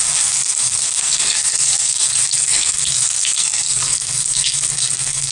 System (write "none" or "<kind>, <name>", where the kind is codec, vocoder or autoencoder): codec, SNAC